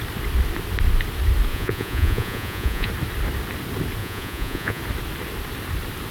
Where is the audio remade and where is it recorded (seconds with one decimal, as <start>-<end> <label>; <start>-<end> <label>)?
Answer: 0.0-1.5 recorded; 1.5-2.9 remade; 2.9-4.0 recorded; 4.0-4.8 remade; 4.8-6.1 recorded